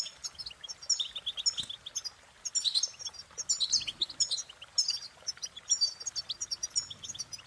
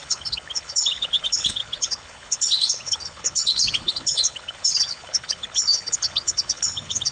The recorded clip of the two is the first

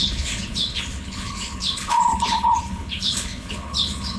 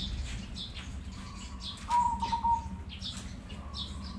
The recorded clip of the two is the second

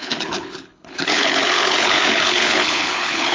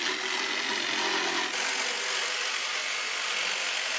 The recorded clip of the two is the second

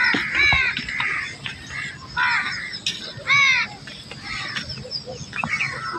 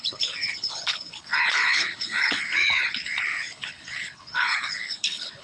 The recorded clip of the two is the first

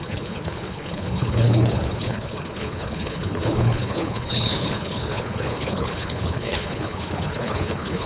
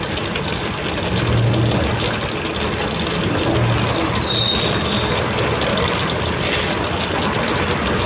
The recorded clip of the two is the second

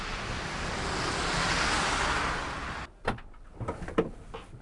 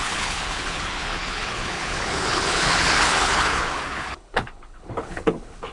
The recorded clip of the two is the first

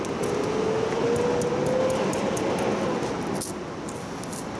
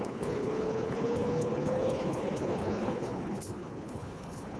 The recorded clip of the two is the first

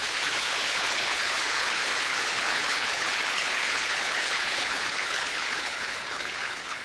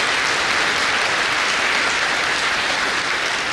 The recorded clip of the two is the second